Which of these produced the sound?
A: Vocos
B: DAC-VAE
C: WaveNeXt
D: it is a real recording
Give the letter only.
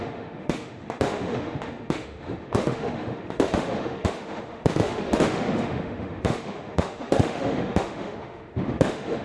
B